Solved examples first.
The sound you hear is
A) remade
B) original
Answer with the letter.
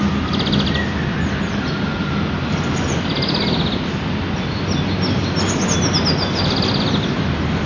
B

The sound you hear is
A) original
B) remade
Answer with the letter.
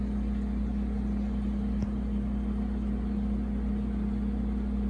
A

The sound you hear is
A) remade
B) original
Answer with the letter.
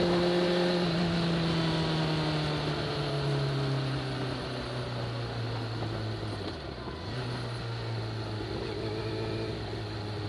B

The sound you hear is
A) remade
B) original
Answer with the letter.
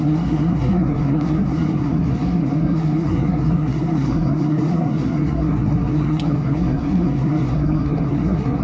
A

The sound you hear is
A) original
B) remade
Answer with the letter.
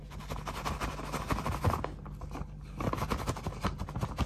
A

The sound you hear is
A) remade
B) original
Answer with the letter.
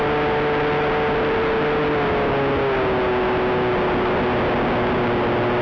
B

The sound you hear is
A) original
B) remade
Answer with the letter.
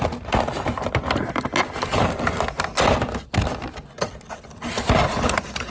A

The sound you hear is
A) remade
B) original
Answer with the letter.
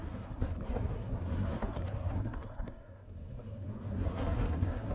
A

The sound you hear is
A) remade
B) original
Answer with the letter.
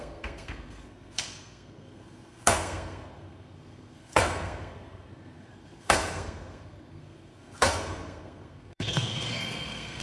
A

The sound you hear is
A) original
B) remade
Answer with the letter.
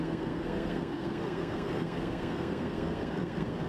B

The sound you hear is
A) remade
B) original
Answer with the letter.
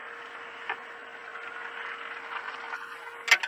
B